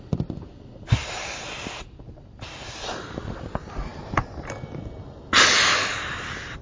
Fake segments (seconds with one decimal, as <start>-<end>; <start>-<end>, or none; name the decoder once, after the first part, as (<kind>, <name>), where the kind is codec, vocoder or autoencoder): none